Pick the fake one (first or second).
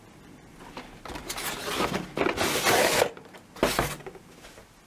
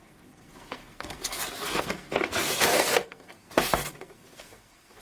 second